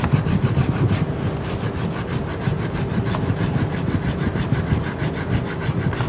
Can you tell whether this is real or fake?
real